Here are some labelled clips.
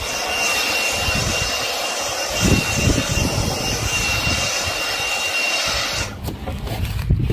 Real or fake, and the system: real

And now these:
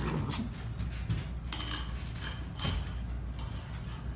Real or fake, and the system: real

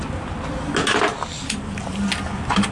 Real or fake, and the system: real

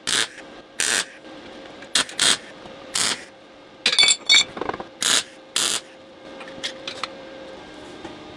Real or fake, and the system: real